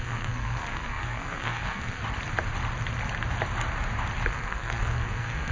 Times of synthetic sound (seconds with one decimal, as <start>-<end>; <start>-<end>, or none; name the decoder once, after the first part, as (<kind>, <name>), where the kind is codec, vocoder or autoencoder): 0.0-2.0 (codec, SNAC); 4.3-5.5